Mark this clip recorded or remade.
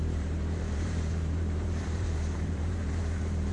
remade